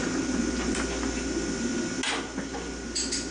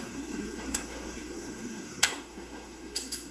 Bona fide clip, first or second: first